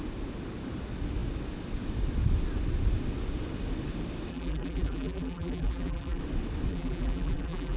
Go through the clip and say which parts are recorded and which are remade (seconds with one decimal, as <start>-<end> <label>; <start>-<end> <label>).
0.0-4.3 recorded; 4.3-6.2 remade; 6.2-6.7 recorded; 6.7-7.8 remade